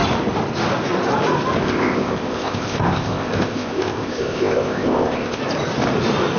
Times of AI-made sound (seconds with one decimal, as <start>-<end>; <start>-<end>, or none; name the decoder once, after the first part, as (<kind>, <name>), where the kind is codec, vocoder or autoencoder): 1.6-5.4 (codec, ZipCodec)